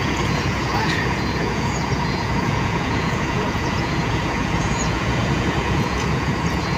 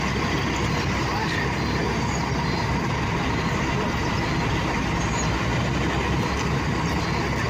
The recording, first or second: second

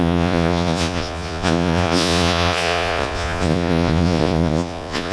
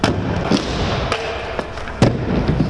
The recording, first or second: second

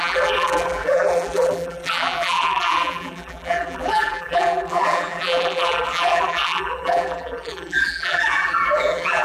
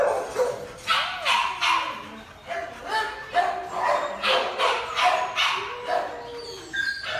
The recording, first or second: second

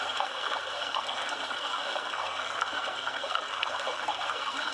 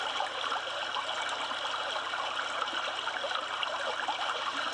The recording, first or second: second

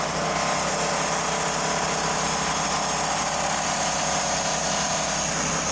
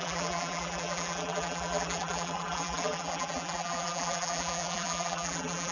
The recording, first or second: first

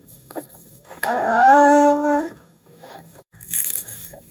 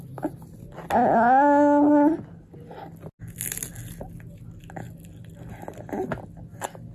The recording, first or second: second